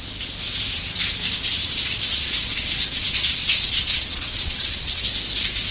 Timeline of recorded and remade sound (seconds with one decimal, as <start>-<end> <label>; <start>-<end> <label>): 0.0-1.6 recorded; 1.6-5.0 remade; 5.0-5.7 recorded